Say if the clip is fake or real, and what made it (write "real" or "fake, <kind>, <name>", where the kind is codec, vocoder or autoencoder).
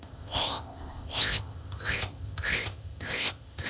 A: fake, codec, ZipCodec